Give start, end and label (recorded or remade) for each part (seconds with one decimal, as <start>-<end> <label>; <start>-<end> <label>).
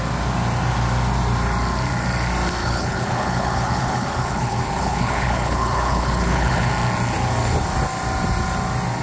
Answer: 0.0-2.6 recorded; 2.6-6.7 remade; 6.7-9.0 recorded